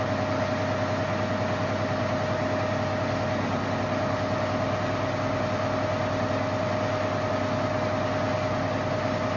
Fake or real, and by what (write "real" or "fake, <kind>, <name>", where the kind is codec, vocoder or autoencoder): real